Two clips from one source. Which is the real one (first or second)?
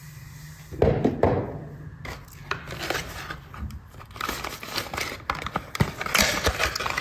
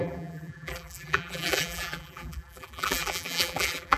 first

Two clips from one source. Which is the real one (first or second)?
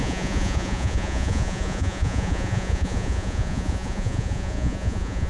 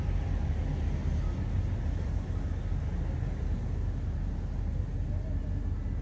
second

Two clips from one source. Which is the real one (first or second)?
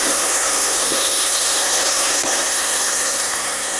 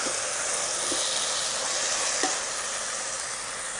second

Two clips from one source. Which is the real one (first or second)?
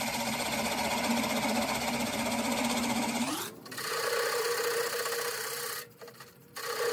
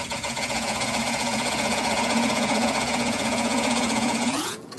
first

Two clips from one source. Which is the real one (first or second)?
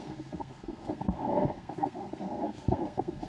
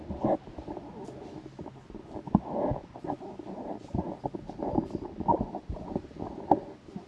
second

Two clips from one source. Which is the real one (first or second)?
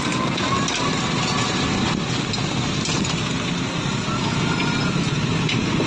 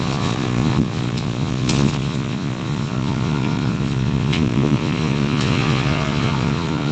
first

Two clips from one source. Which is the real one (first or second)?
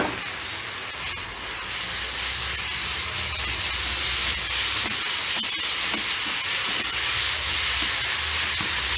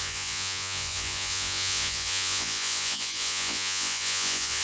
first